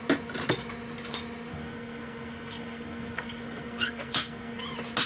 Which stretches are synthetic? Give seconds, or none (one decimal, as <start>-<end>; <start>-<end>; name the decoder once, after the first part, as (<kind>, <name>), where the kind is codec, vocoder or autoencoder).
1.5-4.6 (codec, SNAC)